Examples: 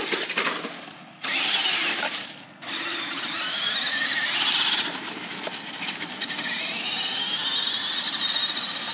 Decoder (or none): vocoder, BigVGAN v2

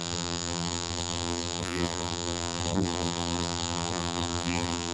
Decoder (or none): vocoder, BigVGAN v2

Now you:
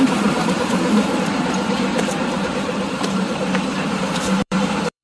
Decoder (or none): vocoder, BigVGAN v2